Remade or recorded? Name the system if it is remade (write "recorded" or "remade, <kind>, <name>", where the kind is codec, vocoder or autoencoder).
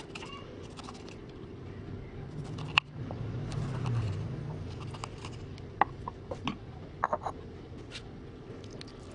recorded